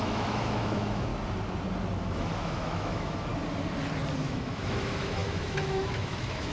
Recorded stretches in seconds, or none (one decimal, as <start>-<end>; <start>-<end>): 1.1-2.0; 3.3-4.2